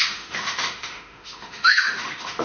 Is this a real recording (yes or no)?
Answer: no